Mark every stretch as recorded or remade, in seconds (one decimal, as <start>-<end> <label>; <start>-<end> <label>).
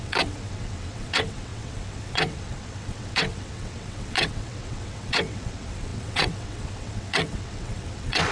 0.0-8.3 remade